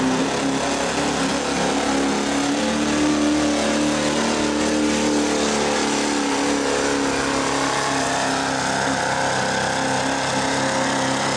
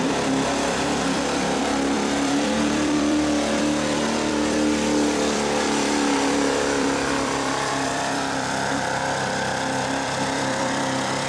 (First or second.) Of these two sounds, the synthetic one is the second